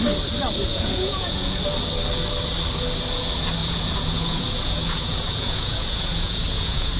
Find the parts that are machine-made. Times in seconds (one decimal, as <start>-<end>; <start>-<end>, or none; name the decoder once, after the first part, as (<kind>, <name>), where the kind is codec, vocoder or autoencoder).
0.7-1.6 (vocoder, Vocos); 3.6-7.0